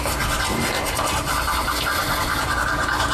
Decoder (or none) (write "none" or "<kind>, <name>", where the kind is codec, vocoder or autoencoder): none